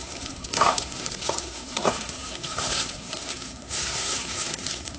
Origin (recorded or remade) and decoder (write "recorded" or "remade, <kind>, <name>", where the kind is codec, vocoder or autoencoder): remade, codec, SNAC